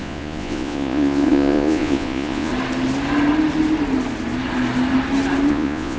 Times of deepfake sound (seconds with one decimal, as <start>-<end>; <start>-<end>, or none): 0.0-2.5; 5.5-6.0